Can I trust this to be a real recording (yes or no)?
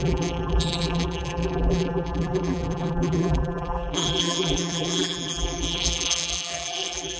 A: no